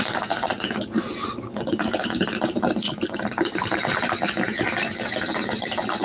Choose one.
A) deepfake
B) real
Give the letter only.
B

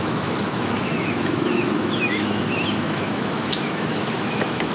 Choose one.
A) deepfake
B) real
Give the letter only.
A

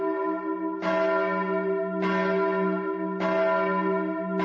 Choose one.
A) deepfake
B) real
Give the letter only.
B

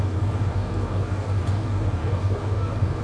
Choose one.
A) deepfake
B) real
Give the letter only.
A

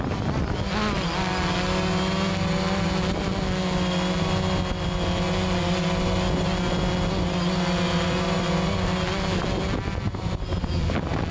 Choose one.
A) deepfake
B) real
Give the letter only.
B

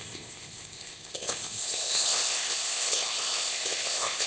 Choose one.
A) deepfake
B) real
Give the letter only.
A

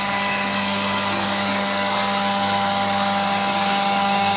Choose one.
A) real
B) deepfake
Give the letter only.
B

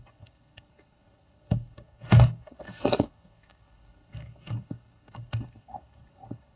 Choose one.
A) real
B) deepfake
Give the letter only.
B